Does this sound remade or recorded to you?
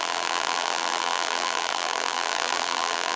remade